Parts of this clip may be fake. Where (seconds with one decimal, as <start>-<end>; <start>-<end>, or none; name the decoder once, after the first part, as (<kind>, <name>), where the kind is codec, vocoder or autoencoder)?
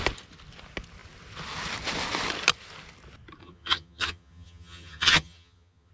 3.4-5.9 (vocoder, HiFi-GAN)